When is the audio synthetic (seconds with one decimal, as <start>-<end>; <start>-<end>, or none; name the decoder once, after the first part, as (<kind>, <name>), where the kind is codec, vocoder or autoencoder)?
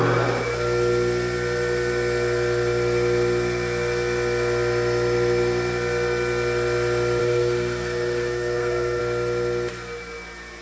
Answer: 7.2-9.0 (codec, SNAC)